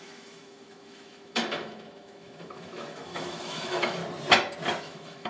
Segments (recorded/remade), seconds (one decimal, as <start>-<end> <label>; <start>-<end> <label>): 0.0-4.0 remade; 4.0-4.8 recorded; 4.8-5.3 remade